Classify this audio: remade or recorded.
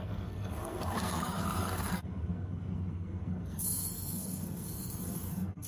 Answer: remade